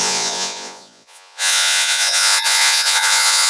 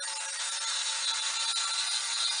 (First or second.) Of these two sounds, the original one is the second